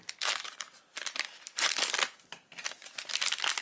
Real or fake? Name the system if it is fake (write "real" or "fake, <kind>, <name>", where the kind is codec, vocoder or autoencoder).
real